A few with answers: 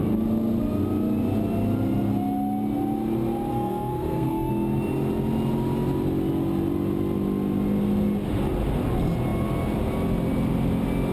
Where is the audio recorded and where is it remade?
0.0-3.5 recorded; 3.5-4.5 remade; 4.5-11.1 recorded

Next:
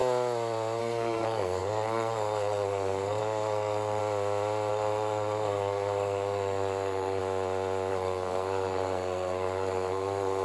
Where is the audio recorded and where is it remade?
0.0-0.8 recorded; 0.8-4.0 remade; 4.0-4.7 recorded; 4.7-7.2 remade; 7.2-7.9 recorded; 7.9-10.4 remade

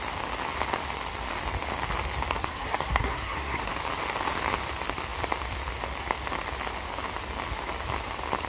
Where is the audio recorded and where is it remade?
0.0-2.4 recorded; 2.4-3.7 remade; 3.7-8.5 recorded

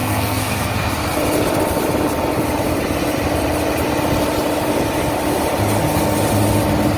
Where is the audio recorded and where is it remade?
0.0-0.9 remade; 0.9-7.0 recorded